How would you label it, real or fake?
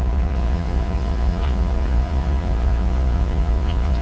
fake